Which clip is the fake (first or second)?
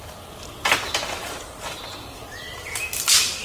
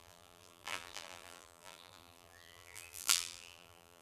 second